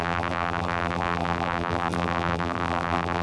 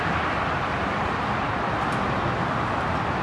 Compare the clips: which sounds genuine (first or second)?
second